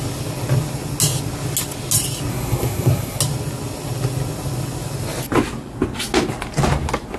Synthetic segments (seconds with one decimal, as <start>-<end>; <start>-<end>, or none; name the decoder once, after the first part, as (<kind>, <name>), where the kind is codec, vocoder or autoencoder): 2.3-3.2 (codec, SNAC)